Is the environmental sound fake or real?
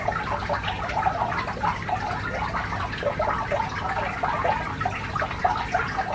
real